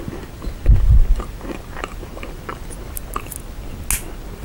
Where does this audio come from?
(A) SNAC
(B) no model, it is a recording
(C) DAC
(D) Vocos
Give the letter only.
B